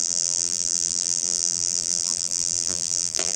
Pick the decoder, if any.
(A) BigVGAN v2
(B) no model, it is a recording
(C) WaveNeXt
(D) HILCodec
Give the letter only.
A